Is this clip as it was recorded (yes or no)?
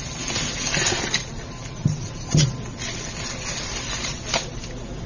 yes